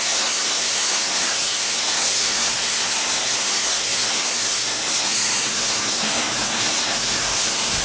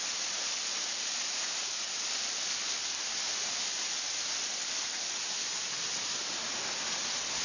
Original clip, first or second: second